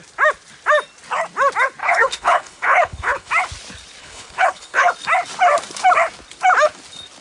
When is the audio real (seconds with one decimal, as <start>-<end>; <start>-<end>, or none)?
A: 0.0-1.8; 3.3-4.0; 4.9-7.2